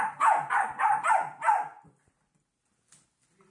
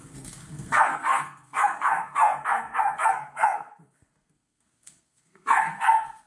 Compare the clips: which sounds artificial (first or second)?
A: second